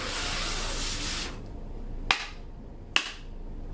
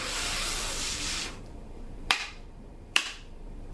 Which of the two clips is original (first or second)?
first